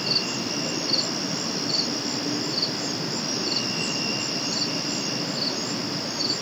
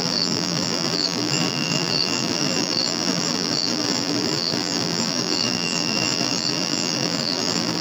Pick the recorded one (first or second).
first